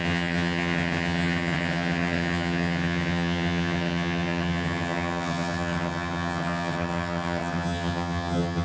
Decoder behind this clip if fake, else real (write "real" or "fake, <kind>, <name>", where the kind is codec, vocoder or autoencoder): fake, vocoder, HiFi-GAN